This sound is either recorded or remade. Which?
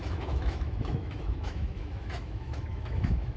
remade